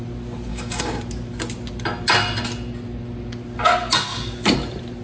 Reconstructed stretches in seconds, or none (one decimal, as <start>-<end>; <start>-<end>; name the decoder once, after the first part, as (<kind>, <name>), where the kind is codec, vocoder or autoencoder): 0.5-1.0 (codec, DAC)